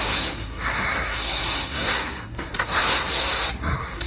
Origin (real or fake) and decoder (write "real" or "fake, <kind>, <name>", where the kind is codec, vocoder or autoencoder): fake, codec, SNAC